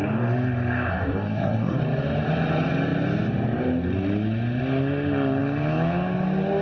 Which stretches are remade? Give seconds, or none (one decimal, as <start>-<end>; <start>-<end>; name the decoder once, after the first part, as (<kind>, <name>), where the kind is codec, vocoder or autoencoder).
0.9-1.8 (codec, SNAC)